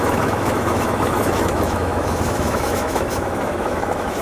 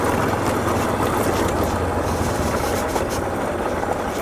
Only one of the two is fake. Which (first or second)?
first